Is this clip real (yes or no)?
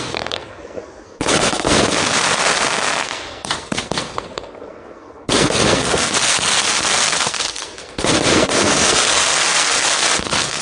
no